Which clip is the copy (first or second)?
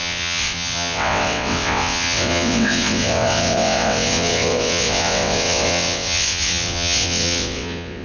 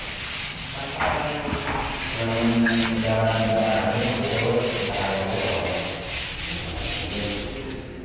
first